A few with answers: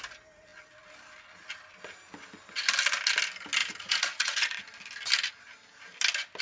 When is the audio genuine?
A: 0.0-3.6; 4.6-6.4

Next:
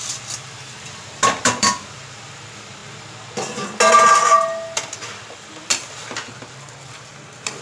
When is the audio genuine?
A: 2.8-7.6